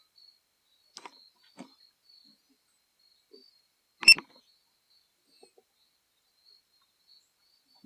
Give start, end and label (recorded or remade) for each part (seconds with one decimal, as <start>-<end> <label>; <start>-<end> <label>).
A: 0.0-7.9 recorded